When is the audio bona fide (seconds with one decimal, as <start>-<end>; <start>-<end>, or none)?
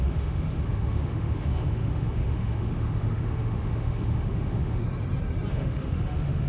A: 4.8-5.5